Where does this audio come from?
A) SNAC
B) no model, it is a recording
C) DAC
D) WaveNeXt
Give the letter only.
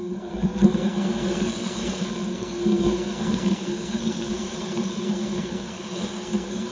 A